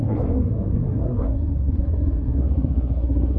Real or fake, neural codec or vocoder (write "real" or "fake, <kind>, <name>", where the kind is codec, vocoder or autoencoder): fake, codec, SNAC